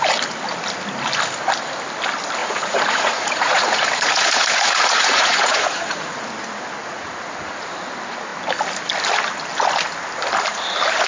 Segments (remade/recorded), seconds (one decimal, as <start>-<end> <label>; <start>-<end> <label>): 0.0-2.4 recorded; 2.4-6.2 remade; 6.2-6.8 recorded; 6.8-7.8 remade; 7.8-11.1 recorded